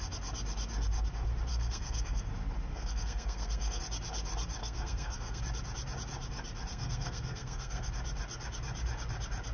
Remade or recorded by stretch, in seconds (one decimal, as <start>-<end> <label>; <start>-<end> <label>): 0.0-1.5 recorded; 1.5-2.3 remade; 2.3-2.7 recorded; 2.7-3.8 remade; 3.8-4.6 recorded; 4.6-5.4 remade; 5.4-6.7 recorded; 6.7-7.9 remade; 7.9-9.5 recorded